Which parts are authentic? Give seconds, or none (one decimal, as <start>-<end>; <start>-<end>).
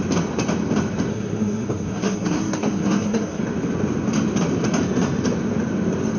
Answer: 0.0-1.1; 3.4-6.2